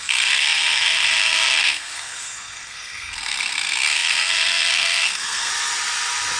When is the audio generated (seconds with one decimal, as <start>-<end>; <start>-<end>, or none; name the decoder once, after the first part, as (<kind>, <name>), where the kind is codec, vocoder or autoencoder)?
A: 0.0-5.5 (codec, SNAC)